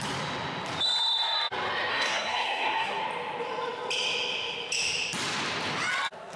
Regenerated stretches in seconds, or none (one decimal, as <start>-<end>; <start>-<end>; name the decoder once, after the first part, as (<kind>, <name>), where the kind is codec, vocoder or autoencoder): 1.9-3.0 (codec, SNAC)